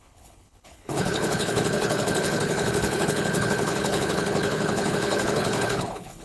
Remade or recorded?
remade